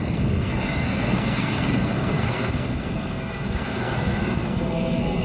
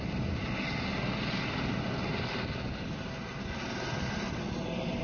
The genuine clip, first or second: second